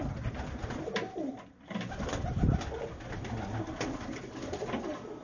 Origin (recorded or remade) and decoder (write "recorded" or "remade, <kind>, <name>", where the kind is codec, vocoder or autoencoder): recorded